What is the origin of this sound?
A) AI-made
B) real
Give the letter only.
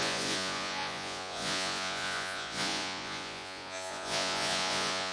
A